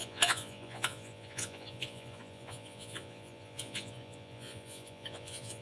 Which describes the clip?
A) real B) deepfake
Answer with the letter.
B